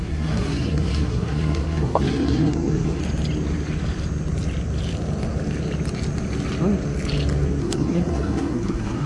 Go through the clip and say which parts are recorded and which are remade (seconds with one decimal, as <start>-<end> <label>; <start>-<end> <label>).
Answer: 0.0-3.0 remade; 3.0-7.6 recorded; 7.6-9.1 remade